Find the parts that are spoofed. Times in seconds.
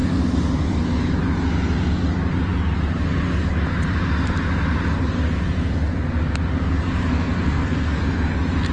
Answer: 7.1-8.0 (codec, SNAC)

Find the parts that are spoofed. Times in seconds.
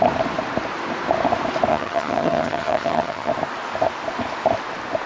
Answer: 1.7-3.3 (vocoder, HiFi-GAN)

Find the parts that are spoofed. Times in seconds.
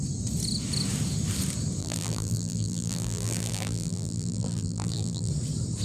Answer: 1.8-5.3 (vocoder, BigVGAN v2)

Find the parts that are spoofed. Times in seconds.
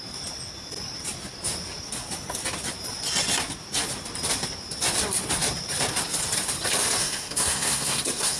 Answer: 7.0-8.4 (codec, SNAC)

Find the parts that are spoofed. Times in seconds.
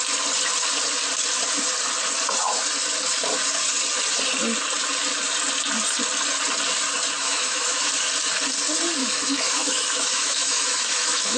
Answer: 7.2-7.8 (autoencoder, DAC-VAE); 9.0-11.4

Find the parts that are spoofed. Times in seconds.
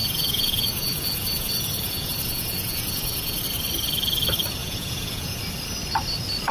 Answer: 0.0-3.4 (vocoder, Vocos); 4.6-5.4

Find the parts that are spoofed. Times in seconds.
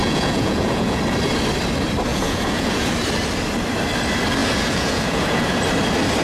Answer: 0.0-1.0 (vocoder, Vocos); 2.1-2.9; 4.4-5.6